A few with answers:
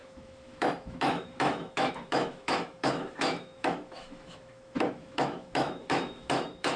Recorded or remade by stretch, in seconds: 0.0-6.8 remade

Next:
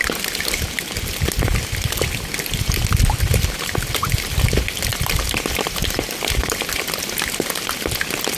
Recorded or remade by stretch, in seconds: 0.0-4.9 recorded; 4.9-6.7 remade; 6.7-8.4 recorded

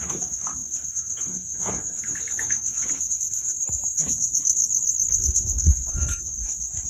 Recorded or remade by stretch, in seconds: 0.0-4.6 remade; 4.6-5.2 recorded; 5.2-6.9 remade

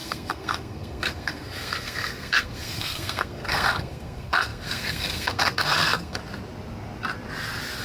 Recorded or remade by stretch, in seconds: 0.0-6.2 remade; 6.2-7.8 recorded

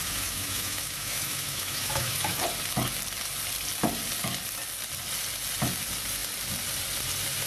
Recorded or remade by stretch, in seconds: 0.0-2.4 remade; 2.4-7.5 recorded

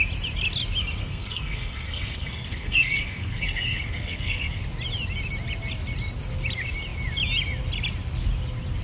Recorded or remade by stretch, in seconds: 0.0-1.0 recorded; 1.0-4.6 remade; 4.6-8.8 recorded

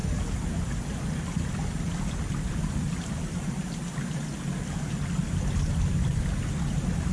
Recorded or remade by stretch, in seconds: 0.0-7.1 recorded